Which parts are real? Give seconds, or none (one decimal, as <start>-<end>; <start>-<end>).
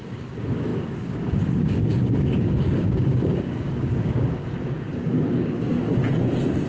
5.7-6.7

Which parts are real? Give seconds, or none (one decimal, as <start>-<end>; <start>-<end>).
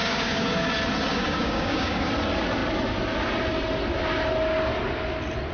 0.7-1.1; 2.1-5.5